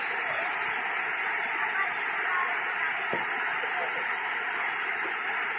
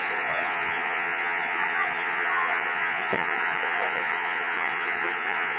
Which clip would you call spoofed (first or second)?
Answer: second